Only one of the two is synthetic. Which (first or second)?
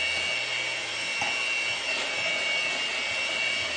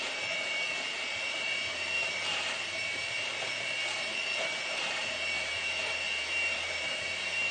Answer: second